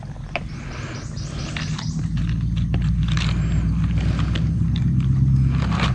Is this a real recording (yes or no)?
yes